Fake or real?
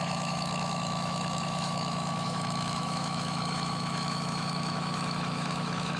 fake